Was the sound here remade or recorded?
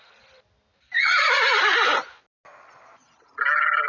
recorded